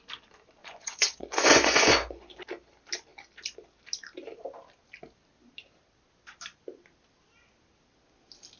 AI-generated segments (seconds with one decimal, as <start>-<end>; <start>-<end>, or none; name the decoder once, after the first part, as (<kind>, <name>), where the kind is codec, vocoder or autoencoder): 0.6-2.4 (vocoder, Vocos)